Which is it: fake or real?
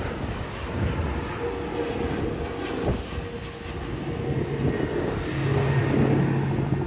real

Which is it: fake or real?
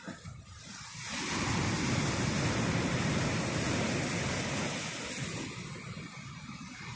real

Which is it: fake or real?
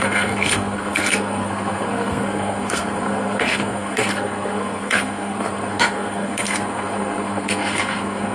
fake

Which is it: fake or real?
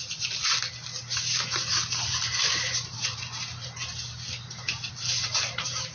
real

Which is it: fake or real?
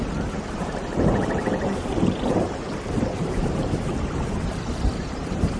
fake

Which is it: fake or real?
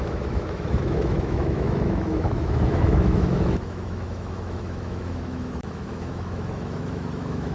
fake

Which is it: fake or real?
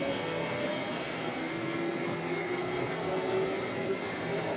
fake